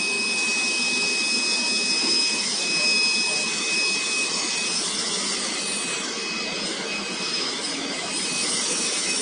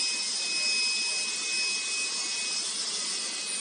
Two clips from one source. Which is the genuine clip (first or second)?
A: second